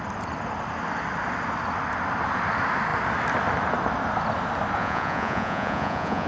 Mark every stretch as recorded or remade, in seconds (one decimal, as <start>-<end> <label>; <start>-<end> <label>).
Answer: 0.0-4.8 recorded; 4.8-6.3 remade